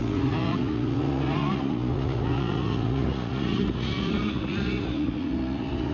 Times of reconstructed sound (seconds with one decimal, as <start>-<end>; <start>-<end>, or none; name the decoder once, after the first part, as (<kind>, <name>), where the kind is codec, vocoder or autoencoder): 0.0-5.9 (vocoder, Vocos)